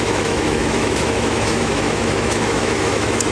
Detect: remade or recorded remade